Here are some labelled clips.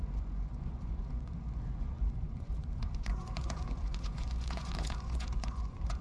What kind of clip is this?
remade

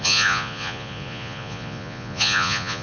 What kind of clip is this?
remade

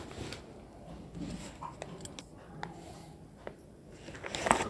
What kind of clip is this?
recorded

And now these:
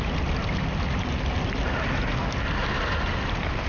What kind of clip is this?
recorded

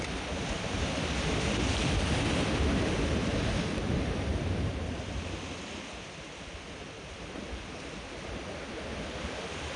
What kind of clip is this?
recorded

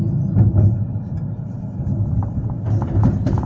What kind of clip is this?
recorded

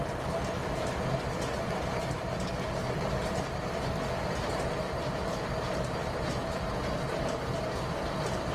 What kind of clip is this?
recorded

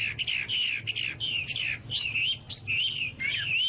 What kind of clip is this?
recorded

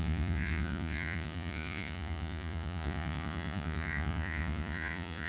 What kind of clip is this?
remade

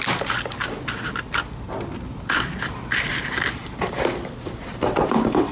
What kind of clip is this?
recorded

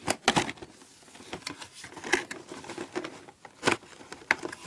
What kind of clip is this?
recorded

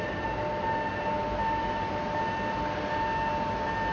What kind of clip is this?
recorded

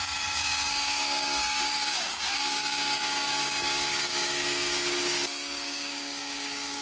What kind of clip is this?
remade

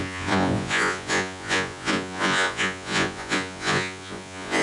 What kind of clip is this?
remade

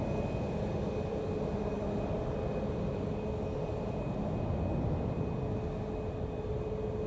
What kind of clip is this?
recorded